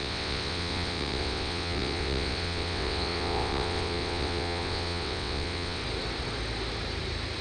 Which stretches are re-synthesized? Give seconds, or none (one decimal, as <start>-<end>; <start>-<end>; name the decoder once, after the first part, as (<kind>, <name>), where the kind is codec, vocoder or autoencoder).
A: 0.0-5.8 (vocoder, WaveNeXt)